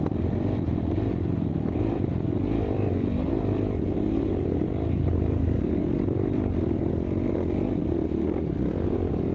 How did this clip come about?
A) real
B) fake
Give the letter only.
A